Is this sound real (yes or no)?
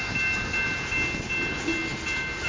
yes